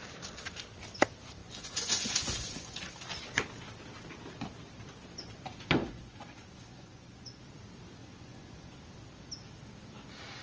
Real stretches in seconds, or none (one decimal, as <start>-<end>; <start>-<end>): 0.0-1.4; 2.9-5.8; 7.4-8.0; 8.8-10.4

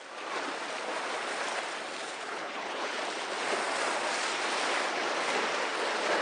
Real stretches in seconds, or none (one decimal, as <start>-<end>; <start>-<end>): 0.0-2.0; 3.0-6.2